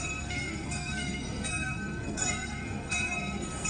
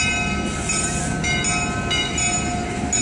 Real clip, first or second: second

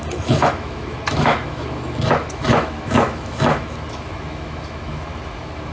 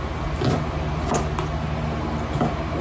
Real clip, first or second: second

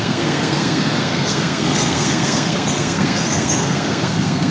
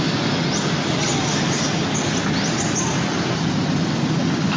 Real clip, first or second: second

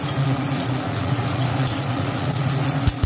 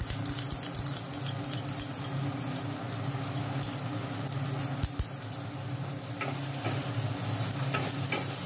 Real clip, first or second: second